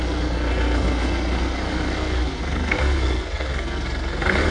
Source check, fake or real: fake